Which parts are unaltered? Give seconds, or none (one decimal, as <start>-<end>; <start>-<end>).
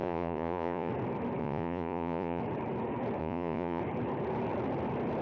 0.9-1.4; 2.4-3.2; 3.8-5.2